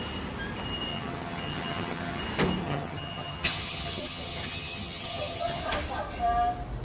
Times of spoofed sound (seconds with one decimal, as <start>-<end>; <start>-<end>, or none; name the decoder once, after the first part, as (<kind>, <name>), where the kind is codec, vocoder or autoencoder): 0.9-2.2 (vocoder, HiFi-GAN); 2.6-5.6